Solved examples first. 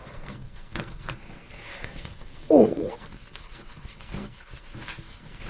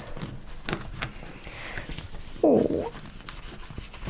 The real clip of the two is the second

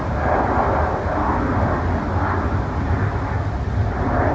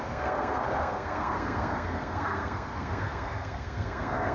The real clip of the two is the first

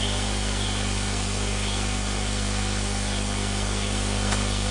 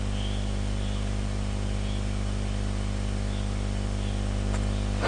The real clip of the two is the second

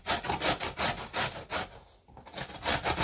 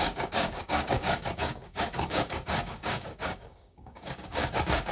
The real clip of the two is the first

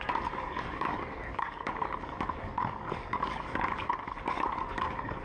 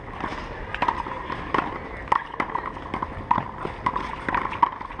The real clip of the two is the second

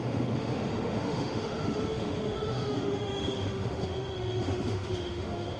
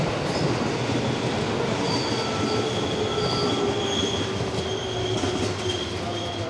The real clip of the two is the second